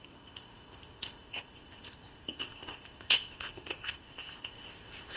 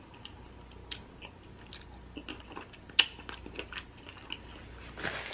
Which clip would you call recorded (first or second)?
second